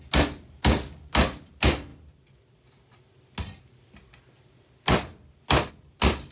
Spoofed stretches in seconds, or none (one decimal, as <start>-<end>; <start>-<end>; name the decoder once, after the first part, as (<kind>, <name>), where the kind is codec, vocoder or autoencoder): none